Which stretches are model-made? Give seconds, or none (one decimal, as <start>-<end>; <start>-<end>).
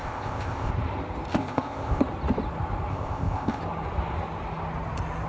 0.0-0.7; 1.3-2.0; 2.9-3.6